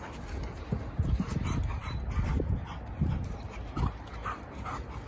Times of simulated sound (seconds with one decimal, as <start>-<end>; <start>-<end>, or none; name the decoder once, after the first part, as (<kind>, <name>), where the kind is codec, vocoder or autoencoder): none